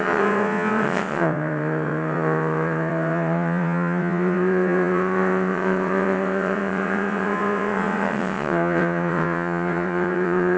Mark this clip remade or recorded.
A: remade